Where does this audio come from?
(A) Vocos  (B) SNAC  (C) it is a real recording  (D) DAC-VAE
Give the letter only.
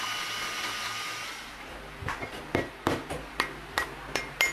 C